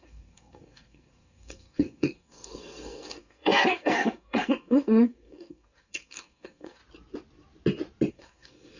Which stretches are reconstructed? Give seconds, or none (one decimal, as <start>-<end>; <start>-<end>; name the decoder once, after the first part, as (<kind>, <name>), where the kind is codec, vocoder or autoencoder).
0.0-6.8 (codec, SNAC); 8.1-8.8